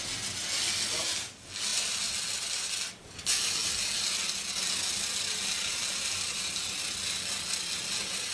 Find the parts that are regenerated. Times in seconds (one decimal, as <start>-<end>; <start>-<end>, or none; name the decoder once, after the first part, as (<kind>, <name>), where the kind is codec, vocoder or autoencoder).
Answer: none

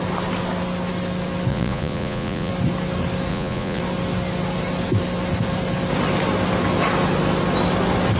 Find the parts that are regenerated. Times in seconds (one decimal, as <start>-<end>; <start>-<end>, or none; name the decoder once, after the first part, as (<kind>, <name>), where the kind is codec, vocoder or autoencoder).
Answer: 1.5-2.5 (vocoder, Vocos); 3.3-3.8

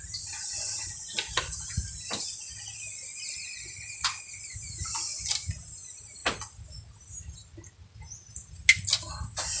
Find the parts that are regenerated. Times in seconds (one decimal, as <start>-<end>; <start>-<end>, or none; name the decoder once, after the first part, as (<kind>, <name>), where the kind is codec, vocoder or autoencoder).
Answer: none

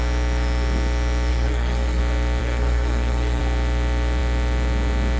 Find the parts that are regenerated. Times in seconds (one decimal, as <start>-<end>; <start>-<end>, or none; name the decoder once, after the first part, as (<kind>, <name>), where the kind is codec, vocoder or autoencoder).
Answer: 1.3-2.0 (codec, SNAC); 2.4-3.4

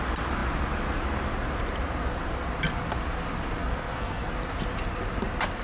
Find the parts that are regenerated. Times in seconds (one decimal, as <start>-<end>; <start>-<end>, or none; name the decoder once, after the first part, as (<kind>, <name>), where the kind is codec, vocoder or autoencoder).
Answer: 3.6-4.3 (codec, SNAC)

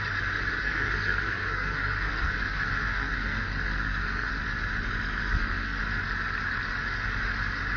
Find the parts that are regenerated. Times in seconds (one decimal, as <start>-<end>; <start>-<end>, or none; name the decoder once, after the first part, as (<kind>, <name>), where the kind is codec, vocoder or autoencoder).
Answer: 0.6-4.3 (codec, SNAC); 5.2-5.8

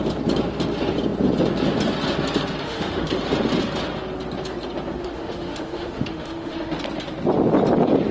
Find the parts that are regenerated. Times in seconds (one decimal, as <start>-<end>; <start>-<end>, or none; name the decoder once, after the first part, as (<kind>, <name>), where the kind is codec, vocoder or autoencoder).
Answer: 2.6-3.2 (autoencoder, DAC-VAE); 4.9-6.7

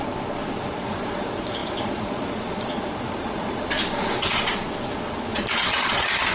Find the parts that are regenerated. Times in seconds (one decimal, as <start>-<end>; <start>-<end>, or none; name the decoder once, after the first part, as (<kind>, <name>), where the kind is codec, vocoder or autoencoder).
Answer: 0.0-6.3 (vocoder, Vocos)